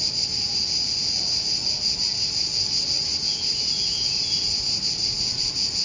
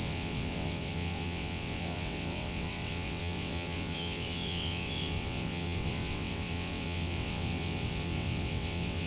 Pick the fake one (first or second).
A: second